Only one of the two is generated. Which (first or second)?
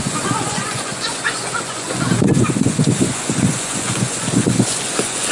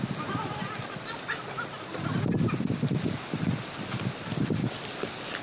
first